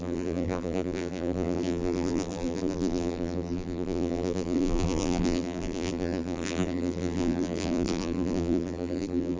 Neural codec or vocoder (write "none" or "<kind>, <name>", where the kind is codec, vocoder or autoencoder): vocoder, BigVGAN v2